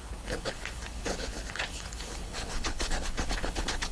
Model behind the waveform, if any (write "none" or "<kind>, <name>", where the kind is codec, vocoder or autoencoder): codec, HILCodec